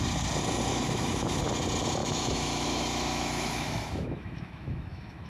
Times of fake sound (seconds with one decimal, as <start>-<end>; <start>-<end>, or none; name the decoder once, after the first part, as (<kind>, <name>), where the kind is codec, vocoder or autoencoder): 0.7-1.4 (autoencoder, DAC-VAE); 2.0-5.3